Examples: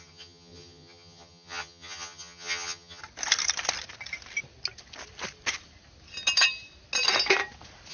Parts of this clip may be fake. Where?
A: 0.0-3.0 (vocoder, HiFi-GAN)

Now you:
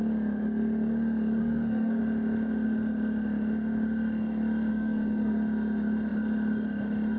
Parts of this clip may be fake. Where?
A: 1.4-2.0 (codec, SNAC); 4.7-5.3

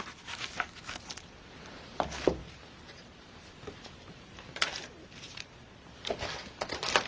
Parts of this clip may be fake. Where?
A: 2.4-6.1 (vocoder, BigVGAN v2)